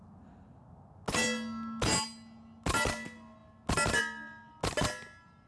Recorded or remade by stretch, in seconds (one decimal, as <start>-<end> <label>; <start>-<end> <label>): 0.0-5.5 recorded